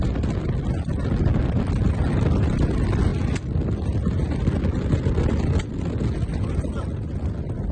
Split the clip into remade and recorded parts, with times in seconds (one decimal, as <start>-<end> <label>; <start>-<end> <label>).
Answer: 0.0-7.7 recorded